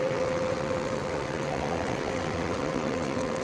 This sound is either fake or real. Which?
fake